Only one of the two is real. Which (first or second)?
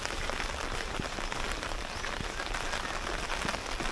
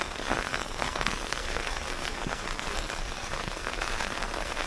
first